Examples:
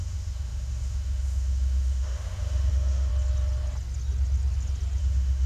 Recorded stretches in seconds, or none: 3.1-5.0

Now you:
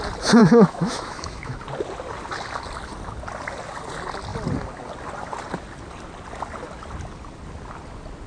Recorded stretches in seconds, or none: 0.0-0.4; 1.6-8.3

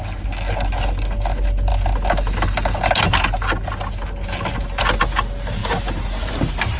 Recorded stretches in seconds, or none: 0.0-6.8

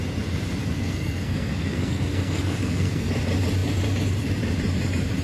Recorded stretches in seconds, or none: 0.0-0.6; 3.1-5.2

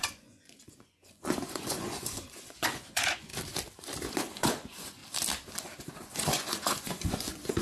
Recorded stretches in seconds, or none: 3.3-4.1; 5.0-6.0